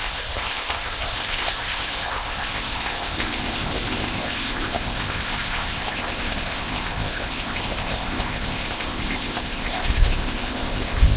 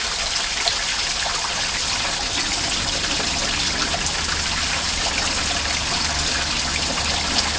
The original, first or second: second